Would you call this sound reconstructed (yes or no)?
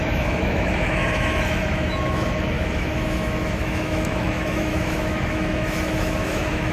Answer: yes